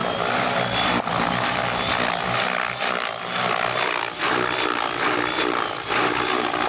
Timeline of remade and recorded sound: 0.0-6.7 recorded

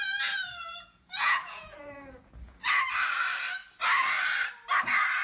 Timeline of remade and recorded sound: 0.0-0.5 recorded; 0.5-2.8 remade; 2.8-5.2 recorded

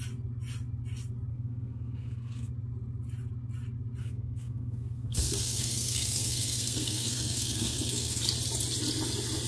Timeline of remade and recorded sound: 0.0-1.3 recorded; 1.3-2.5 remade; 2.5-4.0 recorded; 4.0-8.2 remade; 8.2-9.5 recorded